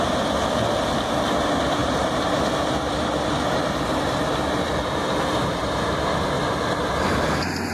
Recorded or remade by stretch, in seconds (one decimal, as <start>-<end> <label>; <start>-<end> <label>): 0.0-1.8 recorded; 1.8-6.4 remade; 6.4-7.7 recorded